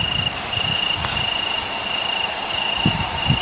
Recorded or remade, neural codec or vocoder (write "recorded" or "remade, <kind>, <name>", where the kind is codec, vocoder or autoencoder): recorded